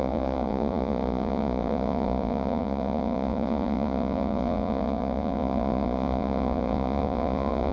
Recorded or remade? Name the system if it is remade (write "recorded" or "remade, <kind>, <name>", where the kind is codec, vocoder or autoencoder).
remade, vocoder, Vocos